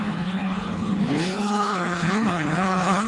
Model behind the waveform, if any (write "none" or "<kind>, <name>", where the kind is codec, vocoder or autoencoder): codec, HILCodec